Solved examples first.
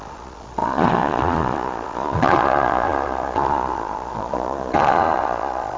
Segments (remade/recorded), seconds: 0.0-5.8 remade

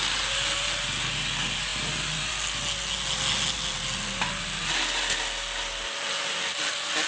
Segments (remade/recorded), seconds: 0.0-7.1 recorded

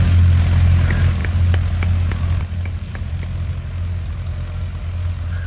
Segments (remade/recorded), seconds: 0.0-2.9 recorded; 2.9-3.5 remade; 3.5-5.5 recorded

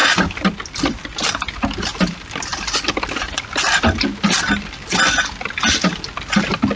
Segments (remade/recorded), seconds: 0.0-6.8 recorded